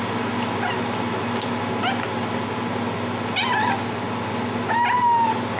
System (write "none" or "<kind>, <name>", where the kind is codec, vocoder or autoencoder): none